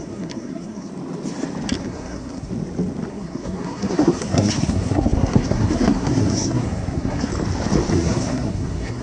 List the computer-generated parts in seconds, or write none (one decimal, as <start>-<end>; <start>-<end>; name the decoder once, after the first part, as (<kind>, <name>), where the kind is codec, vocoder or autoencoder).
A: 0.0-0.9 (codec, SNAC); 1.8-2.5; 3.1-7.3; 7.9-9.0